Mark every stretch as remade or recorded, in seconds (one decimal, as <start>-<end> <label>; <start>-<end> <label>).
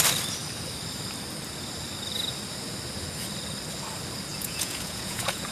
0.0-4.3 recorded; 4.3-5.5 remade